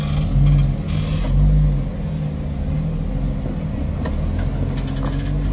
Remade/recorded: recorded